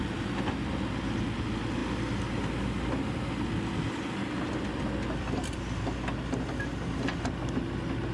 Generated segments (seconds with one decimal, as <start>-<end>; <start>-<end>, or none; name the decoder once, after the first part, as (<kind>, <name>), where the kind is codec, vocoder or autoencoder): none